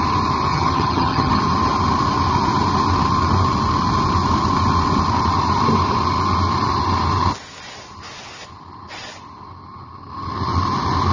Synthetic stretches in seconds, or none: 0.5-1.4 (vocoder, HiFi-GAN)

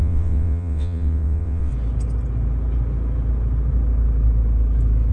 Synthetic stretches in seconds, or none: 0.0-1.7 (vocoder, WaveNeXt)